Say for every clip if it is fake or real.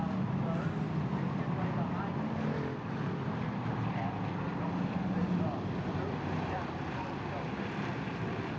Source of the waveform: real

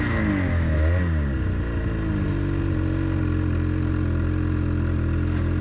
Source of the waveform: real